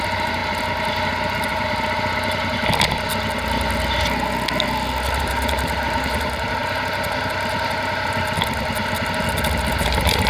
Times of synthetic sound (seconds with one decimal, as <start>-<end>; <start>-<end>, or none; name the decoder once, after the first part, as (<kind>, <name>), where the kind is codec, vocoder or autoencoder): 0.0-0.4 (vocoder, BigVGAN v2); 5.2-6.6; 9.7-10.3